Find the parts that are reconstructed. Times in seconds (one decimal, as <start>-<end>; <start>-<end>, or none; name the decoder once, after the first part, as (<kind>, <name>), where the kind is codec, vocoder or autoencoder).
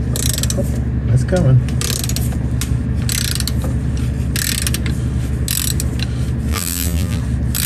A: 6.5-7.2 (vocoder, BigVGAN v2)